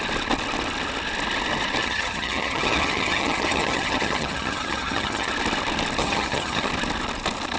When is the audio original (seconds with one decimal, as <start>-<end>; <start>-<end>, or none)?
0.0-1.8; 5.3-6.0; 6.7-7.6